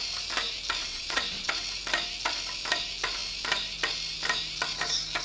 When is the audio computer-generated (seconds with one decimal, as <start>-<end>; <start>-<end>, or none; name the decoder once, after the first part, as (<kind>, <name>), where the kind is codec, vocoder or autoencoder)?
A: 0.8-1.5 (vocoder, WaveNeXt)